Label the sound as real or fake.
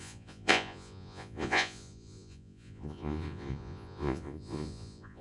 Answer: fake